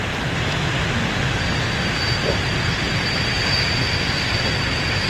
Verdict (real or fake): real